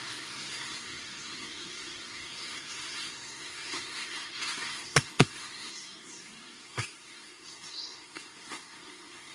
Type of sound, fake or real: fake